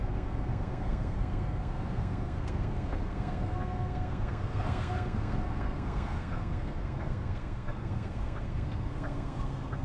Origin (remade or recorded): remade